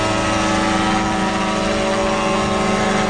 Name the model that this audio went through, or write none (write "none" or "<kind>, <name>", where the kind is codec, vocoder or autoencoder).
none